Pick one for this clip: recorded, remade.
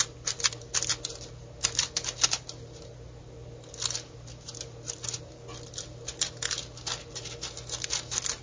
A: recorded